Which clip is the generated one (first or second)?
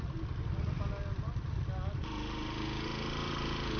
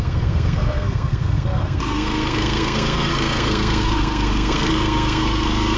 second